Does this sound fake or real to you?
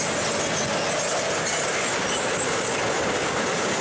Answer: real